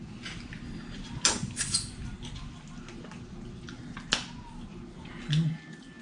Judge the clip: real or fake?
real